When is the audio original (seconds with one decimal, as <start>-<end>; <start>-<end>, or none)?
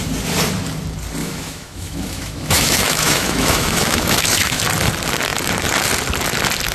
0.0-1.2; 4.6-6.7